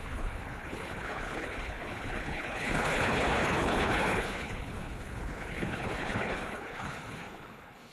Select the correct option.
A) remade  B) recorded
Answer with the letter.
A